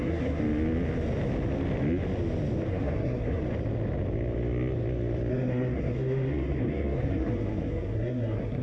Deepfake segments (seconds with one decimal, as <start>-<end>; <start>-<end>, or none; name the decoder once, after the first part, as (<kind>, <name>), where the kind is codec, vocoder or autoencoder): 0.0-0.4 (codec, SNAC); 2.7-3.4; 5.3-8.6